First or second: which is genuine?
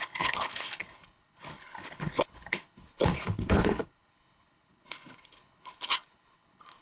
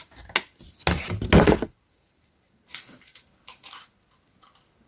second